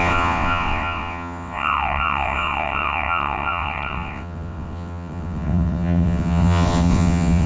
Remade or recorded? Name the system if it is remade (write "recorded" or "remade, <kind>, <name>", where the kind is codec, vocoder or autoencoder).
remade, vocoder, WaveNeXt